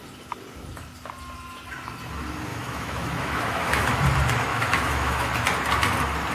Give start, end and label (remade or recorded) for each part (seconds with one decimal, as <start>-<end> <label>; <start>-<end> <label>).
0.0-2.5 recorded; 2.5-4.0 remade; 4.0-4.5 recorded; 4.5-5.3 remade; 5.3-6.3 recorded